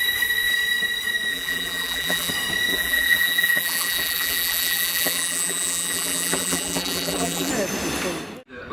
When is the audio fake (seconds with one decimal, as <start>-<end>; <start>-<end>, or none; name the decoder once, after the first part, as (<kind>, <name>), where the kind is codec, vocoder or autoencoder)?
1.3-2.3 (vocoder, BigVGAN v2); 2.7-7.5